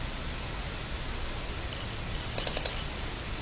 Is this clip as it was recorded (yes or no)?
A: yes